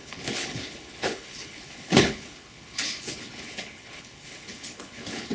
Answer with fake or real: fake